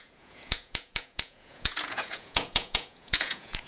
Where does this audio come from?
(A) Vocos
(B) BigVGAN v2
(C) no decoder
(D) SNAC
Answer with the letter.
A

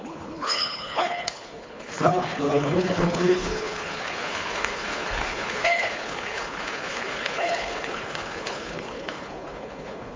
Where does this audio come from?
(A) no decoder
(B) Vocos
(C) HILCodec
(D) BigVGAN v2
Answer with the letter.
C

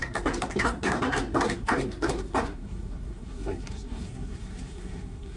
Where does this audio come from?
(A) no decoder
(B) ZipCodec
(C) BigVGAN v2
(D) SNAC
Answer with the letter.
D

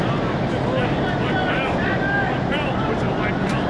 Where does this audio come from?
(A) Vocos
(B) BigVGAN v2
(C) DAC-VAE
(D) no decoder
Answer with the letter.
D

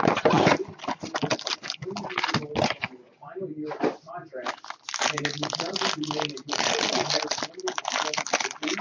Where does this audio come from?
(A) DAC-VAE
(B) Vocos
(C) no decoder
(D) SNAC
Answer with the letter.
C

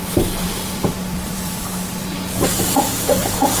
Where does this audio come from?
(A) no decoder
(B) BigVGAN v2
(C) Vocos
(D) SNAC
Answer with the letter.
B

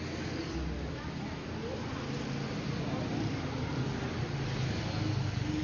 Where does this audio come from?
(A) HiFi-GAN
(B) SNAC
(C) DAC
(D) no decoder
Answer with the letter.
D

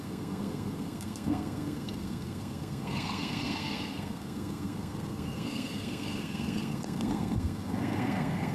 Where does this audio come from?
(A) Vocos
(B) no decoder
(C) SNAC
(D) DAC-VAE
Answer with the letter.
C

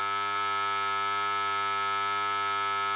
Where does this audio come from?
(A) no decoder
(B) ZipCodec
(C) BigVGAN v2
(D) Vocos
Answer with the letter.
A